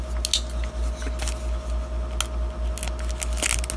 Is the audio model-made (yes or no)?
no